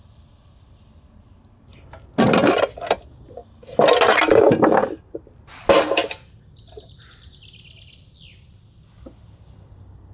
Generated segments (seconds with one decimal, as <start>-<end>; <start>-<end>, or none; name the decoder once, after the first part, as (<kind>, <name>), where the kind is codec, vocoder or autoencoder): 0.0-1.7 (vocoder, BigVGAN v2); 2.5-3.4; 4.3-10.1